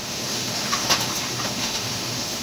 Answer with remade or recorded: remade